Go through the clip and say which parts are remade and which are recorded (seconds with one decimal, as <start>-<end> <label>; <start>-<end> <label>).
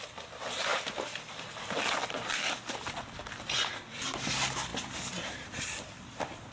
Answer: 0.0-3.2 remade; 3.2-3.7 recorded; 3.7-4.7 remade; 4.7-5.2 recorded; 5.2-6.5 remade